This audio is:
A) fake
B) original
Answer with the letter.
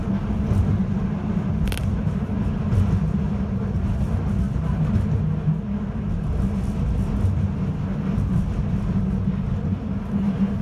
B